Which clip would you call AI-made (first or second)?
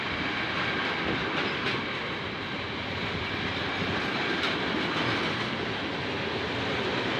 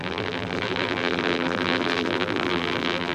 second